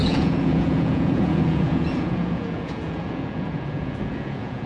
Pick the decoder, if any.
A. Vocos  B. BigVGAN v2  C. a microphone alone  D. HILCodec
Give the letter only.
A